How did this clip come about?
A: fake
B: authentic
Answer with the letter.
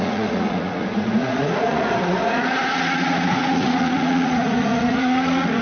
A